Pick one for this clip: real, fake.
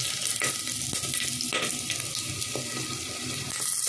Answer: real